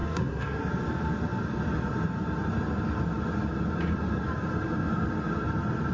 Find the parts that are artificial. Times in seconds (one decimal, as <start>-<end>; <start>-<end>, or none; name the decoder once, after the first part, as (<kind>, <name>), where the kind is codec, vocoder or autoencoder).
0.0-0.7 (codec, SNAC)

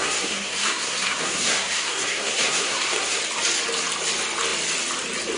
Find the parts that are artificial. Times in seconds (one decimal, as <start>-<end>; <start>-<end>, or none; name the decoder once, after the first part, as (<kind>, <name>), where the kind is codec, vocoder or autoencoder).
0.0-3.2 (codec, SNAC)

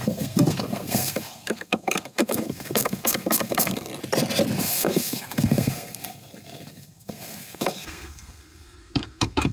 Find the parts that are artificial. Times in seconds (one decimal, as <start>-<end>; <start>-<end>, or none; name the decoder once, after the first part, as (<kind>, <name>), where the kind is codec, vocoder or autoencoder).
0.0-3.9 (codec, SNAC); 4.6-9.5

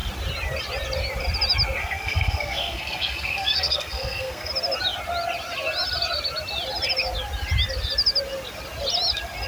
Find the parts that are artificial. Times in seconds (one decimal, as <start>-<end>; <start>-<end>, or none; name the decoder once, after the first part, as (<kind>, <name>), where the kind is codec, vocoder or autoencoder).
1.8-4.5 (codec, SNAC)

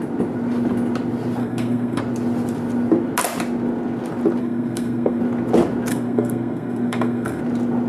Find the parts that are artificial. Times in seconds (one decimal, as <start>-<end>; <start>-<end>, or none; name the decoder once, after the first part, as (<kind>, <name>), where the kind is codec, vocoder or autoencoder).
1.4-2.0 (codec, SNAC); 4.4-5.2; 5.9-7.4